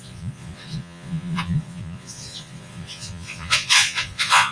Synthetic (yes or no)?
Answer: yes